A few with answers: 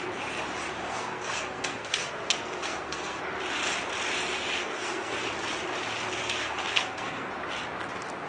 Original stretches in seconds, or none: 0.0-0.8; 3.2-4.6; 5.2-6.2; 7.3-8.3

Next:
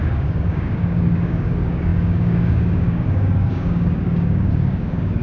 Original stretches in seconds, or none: none

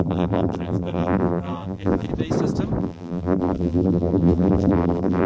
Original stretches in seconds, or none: 2.1-2.8

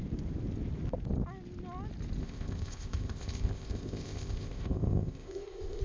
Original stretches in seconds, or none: 0.0-2.2

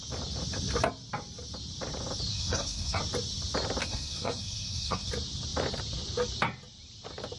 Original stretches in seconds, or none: 0.0-2.3; 3.0-3.8; 5.1-7.4